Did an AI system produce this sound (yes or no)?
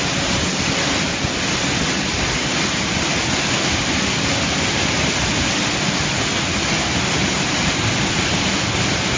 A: no